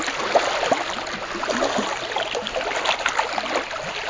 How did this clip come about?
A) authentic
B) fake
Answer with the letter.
A